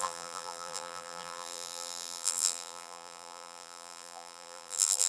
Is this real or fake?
fake